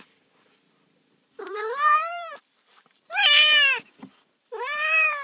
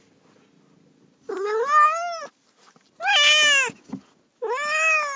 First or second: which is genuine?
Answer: second